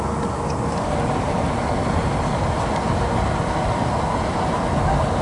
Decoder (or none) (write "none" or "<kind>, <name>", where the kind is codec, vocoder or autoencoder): none